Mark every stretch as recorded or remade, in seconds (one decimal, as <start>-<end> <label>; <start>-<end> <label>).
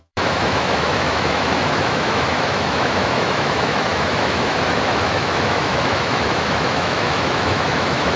0.0-8.2 remade